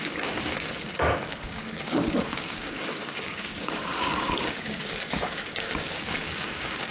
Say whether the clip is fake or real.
fake